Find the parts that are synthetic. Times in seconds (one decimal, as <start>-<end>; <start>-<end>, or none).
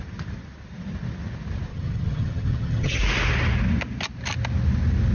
1.7-3.0